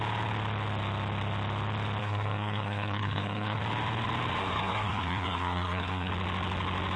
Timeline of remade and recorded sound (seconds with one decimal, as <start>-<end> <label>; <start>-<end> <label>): 0.0-2.0 recorded; 2.0-3.6 remade; 3.6-4.4 recorded; 4.4-6.1 remade; 6.1-7.0 recorded